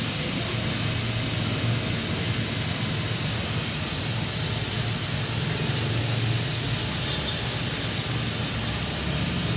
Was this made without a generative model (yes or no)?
yes